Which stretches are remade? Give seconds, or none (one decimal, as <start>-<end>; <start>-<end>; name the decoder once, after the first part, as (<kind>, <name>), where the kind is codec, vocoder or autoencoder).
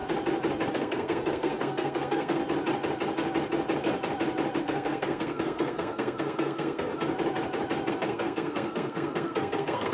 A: 0.7-2.4 (codec, SNAC); 4.6-6.9; 7.9-9.9